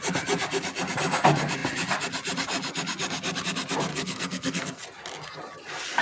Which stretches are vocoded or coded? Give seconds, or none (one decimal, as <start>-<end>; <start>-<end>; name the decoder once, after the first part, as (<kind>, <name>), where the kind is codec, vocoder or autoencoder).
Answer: 3.9-4.8 (codec, SNAC)